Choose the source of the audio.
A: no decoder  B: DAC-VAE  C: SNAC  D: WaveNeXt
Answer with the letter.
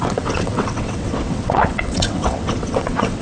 D